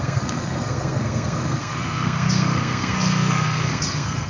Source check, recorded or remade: remade